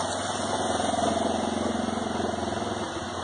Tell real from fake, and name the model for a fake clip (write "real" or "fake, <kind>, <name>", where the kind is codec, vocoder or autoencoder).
real